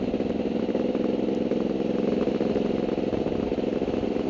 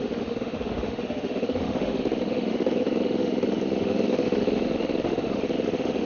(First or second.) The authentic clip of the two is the first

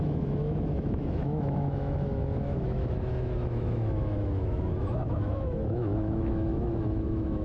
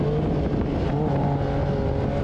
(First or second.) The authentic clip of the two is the second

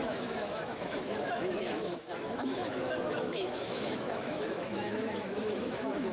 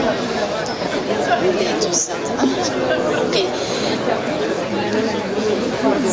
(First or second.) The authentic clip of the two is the second